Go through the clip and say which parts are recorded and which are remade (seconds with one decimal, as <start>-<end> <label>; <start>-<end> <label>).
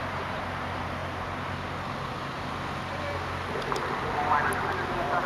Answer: 0.0-5.3 recorded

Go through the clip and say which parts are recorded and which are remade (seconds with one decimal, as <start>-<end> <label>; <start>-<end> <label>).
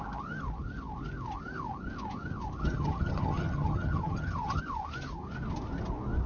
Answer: 0.0-2.6 recorded; 2.6-4.6 remade; 4.6-6.3 recorded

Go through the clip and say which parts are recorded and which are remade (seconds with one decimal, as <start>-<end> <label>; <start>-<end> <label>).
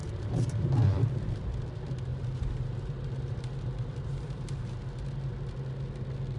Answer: 0.0-1.1 remade; 1.1-2.1 recorded; 2.1-5.1 remade; 5.1-6.4 recorded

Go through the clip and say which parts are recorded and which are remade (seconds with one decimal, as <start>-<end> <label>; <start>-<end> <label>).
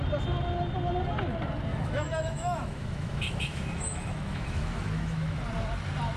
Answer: 0.0-1.7 recorded; 1.7-5.4 remade; 5.4-6.2 recorded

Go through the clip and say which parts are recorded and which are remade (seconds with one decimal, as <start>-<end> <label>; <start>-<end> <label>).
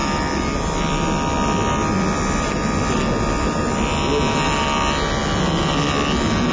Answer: 0.0-6.5 recorded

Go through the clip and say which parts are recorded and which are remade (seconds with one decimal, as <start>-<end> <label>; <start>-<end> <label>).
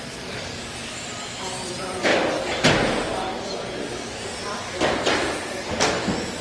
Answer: 0.0-6.4 recorded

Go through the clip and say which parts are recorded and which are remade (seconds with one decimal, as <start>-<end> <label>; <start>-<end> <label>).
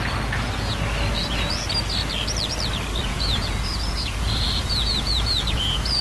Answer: 0.0-3.0 recorded; 3.0-6.0 remade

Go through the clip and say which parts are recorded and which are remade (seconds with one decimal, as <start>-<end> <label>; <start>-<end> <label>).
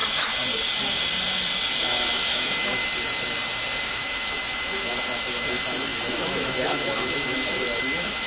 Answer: 0.0-2.1 recorded; 2.1-2.8 remade; 2.8-3.8 recorded; 3.8-8.3 remade